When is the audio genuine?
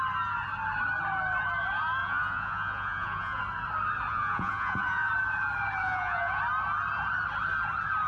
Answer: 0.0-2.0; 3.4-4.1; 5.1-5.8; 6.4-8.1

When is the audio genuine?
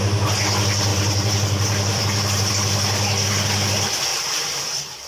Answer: 0.0-0.9; 2.5-4.1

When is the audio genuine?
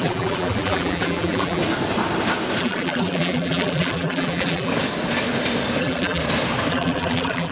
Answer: 1.6-2.6; 4.7-5.8; 6.2-6.7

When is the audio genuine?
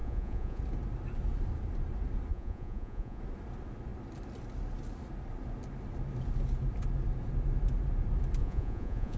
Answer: 0.6-2.3; 3.2-8.4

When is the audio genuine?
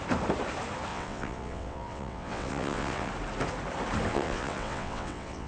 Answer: 0.0-0.9; 3.1-4.1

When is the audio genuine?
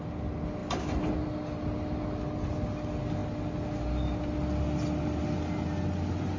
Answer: 0.0-6.4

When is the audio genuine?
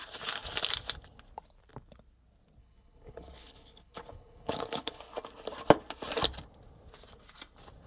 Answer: 0.0-2.6; 5.0-7.9